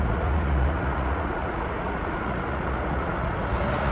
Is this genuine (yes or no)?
no